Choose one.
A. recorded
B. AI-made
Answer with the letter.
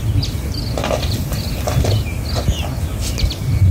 A